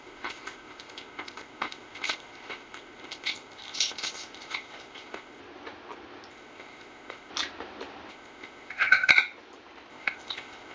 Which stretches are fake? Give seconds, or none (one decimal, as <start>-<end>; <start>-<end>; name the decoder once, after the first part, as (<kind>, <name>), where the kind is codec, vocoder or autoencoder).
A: 0.0-5.4 (codec, ZipCodec); 6.3-7.3; 8.1-9.1; 9.9-10.7